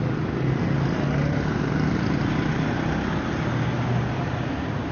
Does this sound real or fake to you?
real